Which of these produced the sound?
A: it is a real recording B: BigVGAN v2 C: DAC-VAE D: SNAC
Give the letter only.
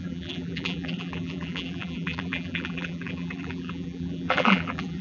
B